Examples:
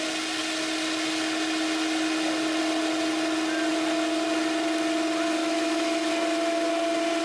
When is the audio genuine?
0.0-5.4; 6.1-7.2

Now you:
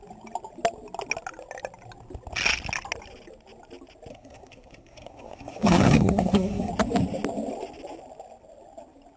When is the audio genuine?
0.0-4.1; 6.7-9.2

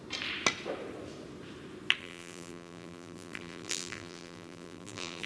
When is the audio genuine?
0.0-2.0

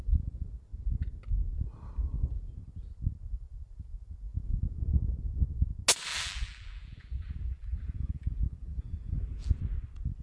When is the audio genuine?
0.0-6.1; 9.6-10.2

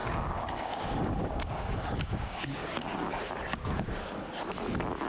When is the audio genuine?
3.1-3.5; 4.1-5.1

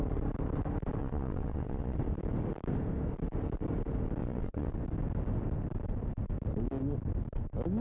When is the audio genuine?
0.0-1.0; 2.0-4.2; 4.7-7.8

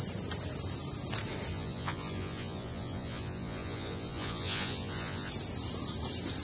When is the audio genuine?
0.0-1.5; 5.3-6.4

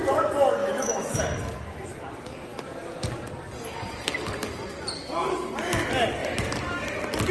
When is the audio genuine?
0.0-0.6; 1.2-7.3